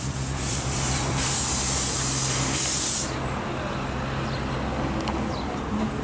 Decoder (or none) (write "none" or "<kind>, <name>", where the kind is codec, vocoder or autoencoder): none